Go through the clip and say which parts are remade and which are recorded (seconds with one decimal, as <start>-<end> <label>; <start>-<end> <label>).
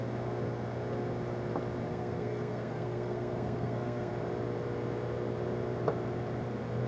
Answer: 0.0-1.9 recorded; 1.9-4.1 remade; 4.1-6.9 recorded